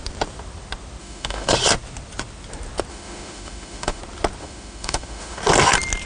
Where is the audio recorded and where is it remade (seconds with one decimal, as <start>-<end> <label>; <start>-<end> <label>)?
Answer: 0.0-1.0 recorded; 1.0-1.5 remade; 1.5-2.9 recorded; 2.9-4.0 remade; 4.0-4.4 recorded; 4.4-5.4 remade; 5.4-6.1 recorded